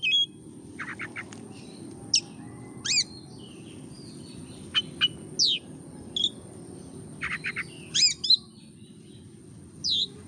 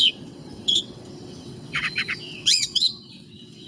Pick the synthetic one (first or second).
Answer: second